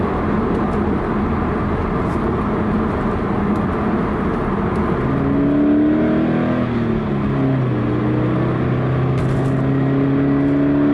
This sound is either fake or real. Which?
real